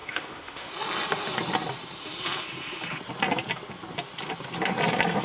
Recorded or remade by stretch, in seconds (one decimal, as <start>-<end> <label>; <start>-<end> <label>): 0.0-0.7 remade; 0.7-5.2 recorded